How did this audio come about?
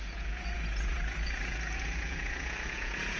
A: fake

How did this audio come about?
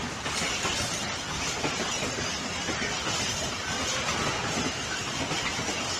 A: real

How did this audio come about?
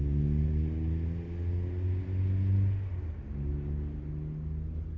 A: real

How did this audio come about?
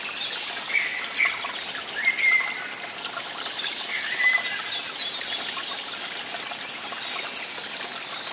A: real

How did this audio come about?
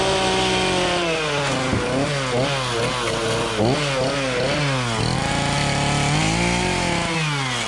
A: real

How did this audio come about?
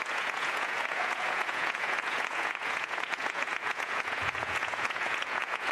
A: fake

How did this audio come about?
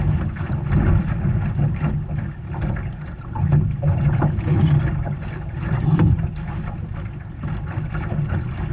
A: real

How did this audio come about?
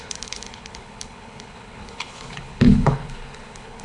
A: fake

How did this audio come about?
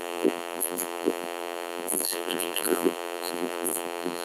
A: fake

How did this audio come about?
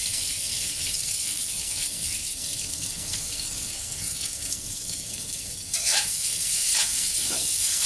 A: fake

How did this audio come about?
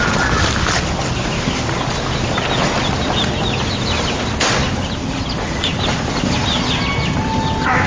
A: real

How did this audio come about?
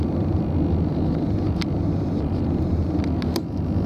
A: real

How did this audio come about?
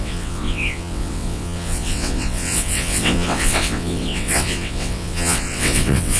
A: fake